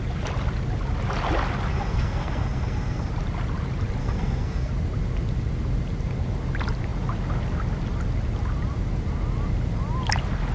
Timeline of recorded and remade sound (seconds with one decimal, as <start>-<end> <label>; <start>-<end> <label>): 0.0-1.7 recorded; 1.7-3.1 remade; 3.1-4.0 recorded; 4.0-4.7 remade; 4.7-10.5 recorded